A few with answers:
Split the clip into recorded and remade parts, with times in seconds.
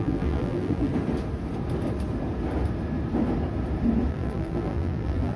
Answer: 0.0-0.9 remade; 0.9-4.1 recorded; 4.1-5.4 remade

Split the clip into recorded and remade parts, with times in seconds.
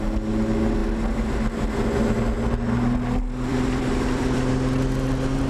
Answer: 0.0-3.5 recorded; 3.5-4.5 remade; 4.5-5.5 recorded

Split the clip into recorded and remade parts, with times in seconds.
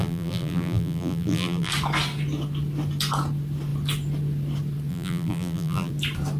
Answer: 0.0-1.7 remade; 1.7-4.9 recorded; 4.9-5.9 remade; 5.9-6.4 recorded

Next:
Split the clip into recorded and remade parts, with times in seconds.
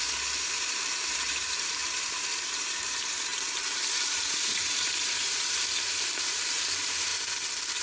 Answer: 0.0-7.1 remade; 7.1-7.8 recorded